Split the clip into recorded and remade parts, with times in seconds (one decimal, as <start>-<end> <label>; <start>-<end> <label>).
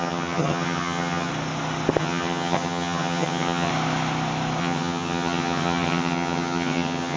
0.0-1.3 remade; 1.3-2.0 recorded; 2.0-3.7 remade; 3.7-4.6 recorded; 4.6-7.2 remade